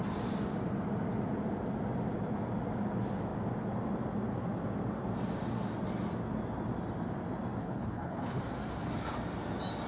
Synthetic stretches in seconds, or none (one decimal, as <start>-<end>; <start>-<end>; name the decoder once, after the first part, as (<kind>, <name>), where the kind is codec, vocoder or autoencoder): 7.6-8.4 (codec, HILCodec)